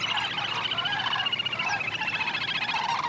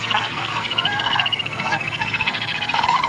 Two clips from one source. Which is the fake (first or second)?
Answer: second